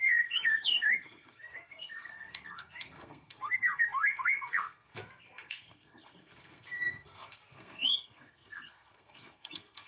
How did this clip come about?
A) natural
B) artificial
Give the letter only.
B